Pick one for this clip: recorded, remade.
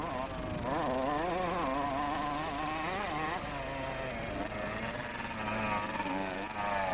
recorded